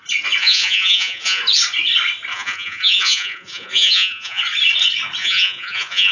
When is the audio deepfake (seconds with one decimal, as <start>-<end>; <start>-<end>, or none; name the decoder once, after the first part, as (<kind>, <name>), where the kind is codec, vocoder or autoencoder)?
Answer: 0.4-1.4 (vocoder, Vocos); 2.3-4.4; 5.2-6.1